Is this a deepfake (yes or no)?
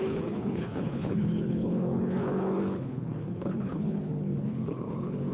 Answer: yes